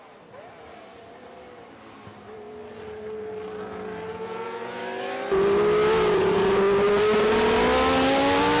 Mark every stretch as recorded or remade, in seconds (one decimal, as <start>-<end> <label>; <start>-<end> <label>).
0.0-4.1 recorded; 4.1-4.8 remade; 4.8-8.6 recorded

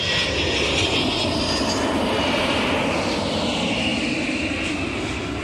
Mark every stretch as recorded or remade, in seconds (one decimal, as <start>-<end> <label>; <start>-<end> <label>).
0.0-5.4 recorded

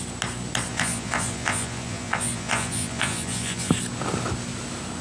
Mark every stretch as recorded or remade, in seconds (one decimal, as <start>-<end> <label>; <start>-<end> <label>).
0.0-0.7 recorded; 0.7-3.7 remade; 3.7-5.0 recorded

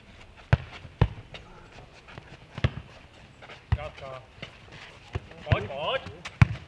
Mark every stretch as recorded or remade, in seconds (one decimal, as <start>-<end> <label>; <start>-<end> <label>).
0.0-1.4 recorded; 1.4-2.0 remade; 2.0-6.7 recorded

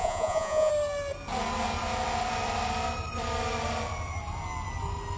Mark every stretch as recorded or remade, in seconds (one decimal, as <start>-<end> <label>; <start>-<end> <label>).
0.0-0.7 remade; 0.7-5.2 recorded

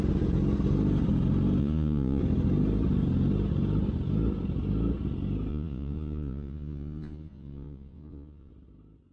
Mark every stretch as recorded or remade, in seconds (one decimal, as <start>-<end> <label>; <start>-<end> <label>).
0.0-1.6 recorded; 1.6-2.2 remade; 2.2-5.5 recorded; 5.5-8.5 remade; 8.5-9.1 recorded

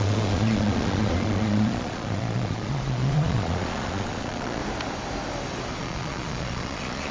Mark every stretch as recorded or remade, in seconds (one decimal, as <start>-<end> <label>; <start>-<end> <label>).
0.0-4.6 remade; 4.6-5.7 recorded; 5.7-7.1 remade